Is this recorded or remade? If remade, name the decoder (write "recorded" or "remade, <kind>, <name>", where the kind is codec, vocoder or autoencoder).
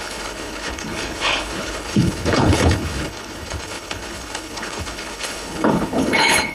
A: remade, codec, HILCodec